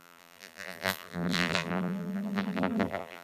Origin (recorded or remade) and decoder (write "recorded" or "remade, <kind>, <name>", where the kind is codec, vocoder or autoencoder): remade, vocoder, BigVGAN v2